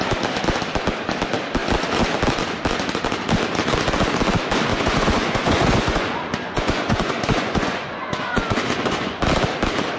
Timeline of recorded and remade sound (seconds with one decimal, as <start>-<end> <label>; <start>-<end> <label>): 0.0-4.7 recorded; 4.7-9.2 remade; 9.2-10.0 recorded